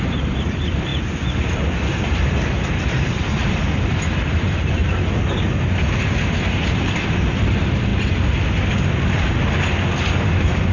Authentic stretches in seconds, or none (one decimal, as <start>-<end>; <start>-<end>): 4.8-6.7; 7.9-9.7